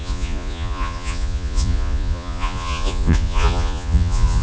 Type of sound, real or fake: fake